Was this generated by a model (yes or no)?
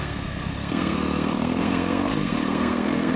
yes